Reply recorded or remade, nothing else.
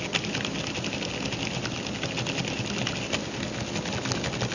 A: recorded